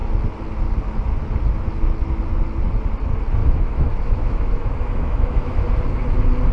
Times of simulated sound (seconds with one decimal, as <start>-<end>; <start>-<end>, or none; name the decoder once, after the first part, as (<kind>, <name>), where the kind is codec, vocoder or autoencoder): 3.4-5.7 (autoencoder, DAC-VAE)